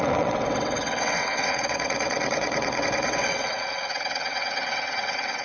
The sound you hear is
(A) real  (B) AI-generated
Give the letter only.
B